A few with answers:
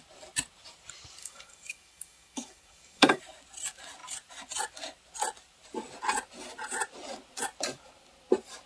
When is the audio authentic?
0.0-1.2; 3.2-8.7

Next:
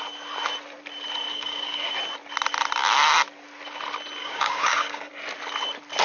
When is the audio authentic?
0.0-1.3; 1.9-4.2; 5.1-6.0

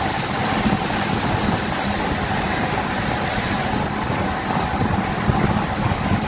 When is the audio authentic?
0.0-6.3